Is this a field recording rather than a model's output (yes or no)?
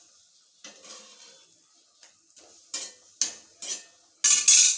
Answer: yes